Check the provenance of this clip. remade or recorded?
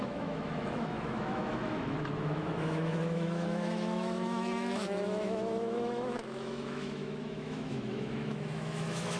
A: remade